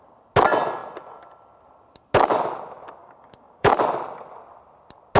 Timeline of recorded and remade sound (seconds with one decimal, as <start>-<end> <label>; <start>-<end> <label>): 0.0-3.0 recorded; 3.0-3.7 remade; 3.7-5.2 recorded

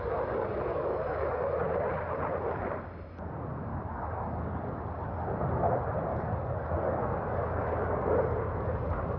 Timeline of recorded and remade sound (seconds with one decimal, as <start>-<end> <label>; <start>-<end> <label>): 0.0-0.7 recorded; 0.7-1.5 remade; 1.5-3.7 recorded; 3.7-4.8 remade; 4.8-6.1 recorded; 6.1-9.2 remade